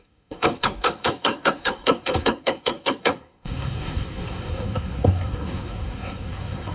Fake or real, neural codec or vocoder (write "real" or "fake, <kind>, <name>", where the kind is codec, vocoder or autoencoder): fake, codec, SNAC